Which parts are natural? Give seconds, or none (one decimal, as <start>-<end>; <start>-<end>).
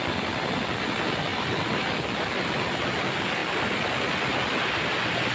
0.0-1.3; 2.0-3.4; 3.9-4.3; 4.8-5.3